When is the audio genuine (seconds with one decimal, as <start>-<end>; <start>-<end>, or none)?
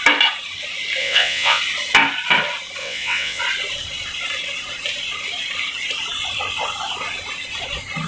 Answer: 0.0-1.0; 1.6-2.8; 3.4-8.1